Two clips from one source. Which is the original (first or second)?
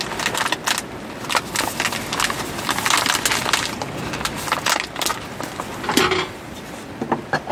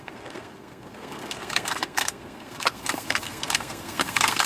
first